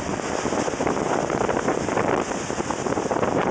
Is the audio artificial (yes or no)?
no